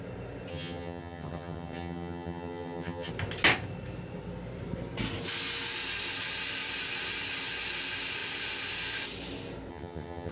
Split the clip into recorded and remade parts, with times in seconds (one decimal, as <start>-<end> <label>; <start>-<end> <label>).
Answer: 0.0-0.5 recorded; 0.5-3.1 remade; 3.1-9.7 recorded; 9.7-10.3 remade